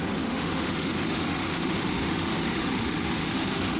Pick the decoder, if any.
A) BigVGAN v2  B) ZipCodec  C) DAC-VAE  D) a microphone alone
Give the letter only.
C